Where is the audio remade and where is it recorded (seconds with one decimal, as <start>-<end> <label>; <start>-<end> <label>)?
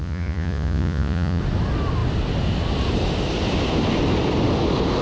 0.0-1.4 remade; 1.4-5.0 recorded